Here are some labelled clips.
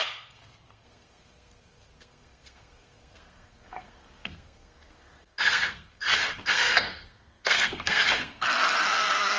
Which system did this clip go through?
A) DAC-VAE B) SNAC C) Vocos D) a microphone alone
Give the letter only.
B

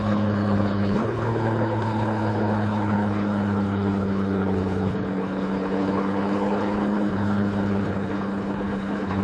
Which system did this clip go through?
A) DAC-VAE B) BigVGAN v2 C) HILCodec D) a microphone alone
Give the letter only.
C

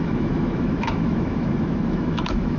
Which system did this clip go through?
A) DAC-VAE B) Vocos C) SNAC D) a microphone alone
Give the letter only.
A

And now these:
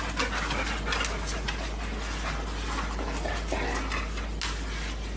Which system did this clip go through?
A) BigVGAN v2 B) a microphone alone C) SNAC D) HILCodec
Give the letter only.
B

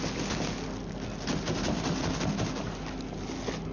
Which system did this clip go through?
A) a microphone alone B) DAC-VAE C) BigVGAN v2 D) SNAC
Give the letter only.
A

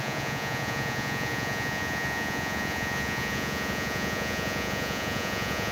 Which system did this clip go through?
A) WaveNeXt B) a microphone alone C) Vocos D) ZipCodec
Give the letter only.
C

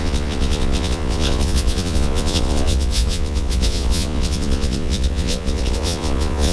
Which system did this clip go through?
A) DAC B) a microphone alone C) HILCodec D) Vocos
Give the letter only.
D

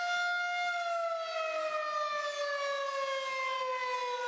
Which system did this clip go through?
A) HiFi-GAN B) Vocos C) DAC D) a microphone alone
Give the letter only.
D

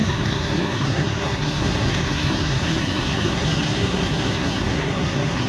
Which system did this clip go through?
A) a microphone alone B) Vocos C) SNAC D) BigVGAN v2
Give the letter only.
C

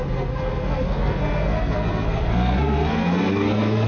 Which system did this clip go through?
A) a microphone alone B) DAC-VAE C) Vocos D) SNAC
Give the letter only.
D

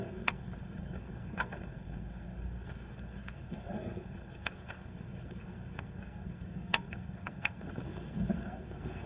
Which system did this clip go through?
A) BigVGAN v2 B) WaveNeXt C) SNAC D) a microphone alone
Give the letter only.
C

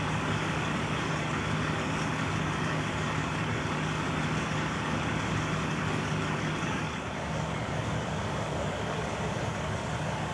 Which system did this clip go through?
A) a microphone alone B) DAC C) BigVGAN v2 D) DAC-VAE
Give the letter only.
B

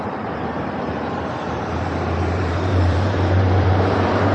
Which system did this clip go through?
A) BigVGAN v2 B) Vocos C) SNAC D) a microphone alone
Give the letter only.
A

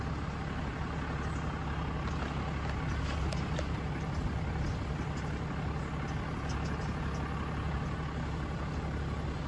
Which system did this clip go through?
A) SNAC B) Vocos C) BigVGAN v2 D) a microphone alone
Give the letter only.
D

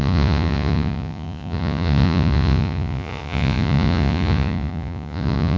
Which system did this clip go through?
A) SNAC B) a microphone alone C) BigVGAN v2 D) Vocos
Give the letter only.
D